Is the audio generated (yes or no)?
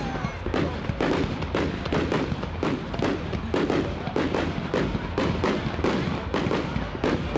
no